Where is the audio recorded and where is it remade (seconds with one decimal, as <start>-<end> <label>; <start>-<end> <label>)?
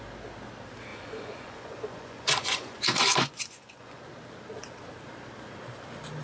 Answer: 0.0-0.9 recorded; 0.9-4.0 remade; 4.0-6.2 recorded